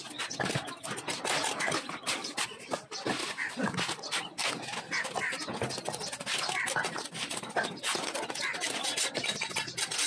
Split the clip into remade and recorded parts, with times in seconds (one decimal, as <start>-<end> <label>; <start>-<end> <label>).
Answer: 0.0-10.1 recorded